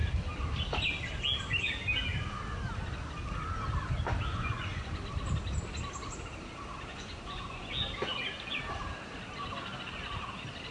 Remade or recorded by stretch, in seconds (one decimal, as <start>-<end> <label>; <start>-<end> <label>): 0.0-4.3 recorded; 4.3-4.9 remade; 4.9-6.9 recorded; 6.9-7.7 remade; 7.7-10.7 recorded